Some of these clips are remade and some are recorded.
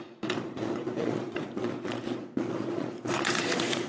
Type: remade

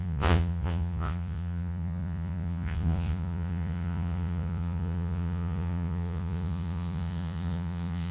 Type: remade